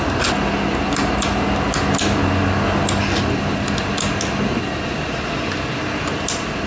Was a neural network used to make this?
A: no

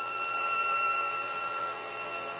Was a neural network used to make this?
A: yes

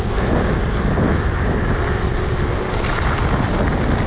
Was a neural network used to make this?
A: no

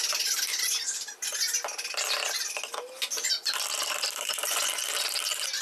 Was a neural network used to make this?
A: no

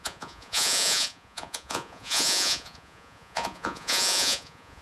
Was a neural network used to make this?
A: yes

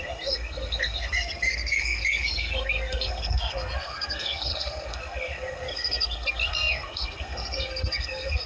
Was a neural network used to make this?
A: yes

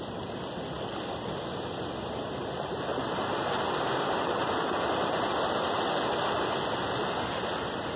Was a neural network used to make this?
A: no